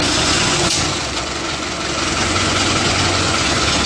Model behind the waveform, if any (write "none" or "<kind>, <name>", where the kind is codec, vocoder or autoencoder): vocoder, Vocos